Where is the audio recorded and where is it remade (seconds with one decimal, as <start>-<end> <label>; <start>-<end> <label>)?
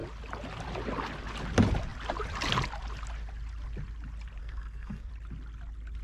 0.0-4.4 recorded; 4.4-5.1 remade; 5.1-6.0 recorded